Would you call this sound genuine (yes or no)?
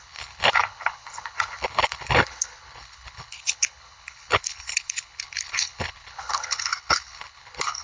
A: no